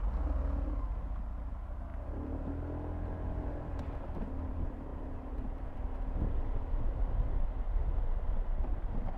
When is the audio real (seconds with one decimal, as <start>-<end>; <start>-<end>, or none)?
0.0-9.2